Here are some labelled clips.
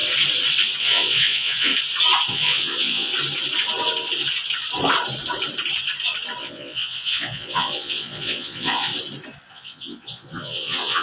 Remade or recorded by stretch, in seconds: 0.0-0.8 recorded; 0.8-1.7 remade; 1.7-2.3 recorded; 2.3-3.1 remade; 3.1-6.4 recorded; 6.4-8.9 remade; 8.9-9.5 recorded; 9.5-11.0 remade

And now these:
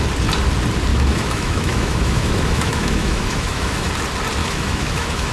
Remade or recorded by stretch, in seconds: 0.0-0.9 recorded; 0.9-3.9 remade; 3.9-4.4 recorded; 4.4-5.3 remade

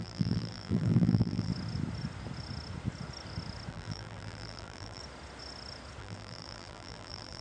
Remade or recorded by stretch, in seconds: 0.0-1.5 remade; 1.5-3.7 recorded; 3.7-5.0 remade; 5.0-6.0 recorded; 6.0-7.4 remade

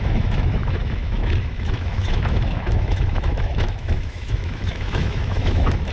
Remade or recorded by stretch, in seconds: 0.0-5.9 remade

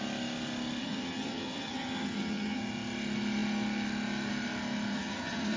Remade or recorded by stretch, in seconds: 0.0-0.8 recorded; 0.8-2.6 remade; 2.6-4.9 recorded; 4.9-5.6 remade

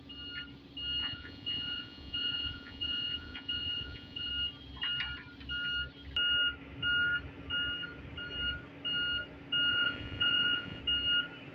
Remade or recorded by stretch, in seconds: 0.0-1.0 recorded; 1.0-4.3 remade; 4.3-9.7 recorded; 9.7-10.8 remade; 10.8-11.5 recorded

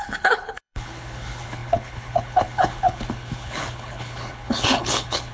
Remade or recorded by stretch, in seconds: 0.0-5.3 remade

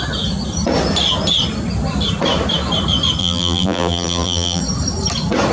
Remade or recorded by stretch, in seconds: 0.0-3.2 recorded; 3.2-4.6 remade; 4.6-5.5 recorded